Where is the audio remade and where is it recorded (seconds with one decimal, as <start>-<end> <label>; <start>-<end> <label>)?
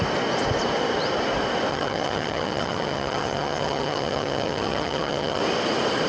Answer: 0.0-1.7 recorded; 1.7-5.4 remade; 5.4-6.1 recorded